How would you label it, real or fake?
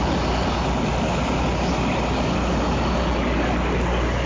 real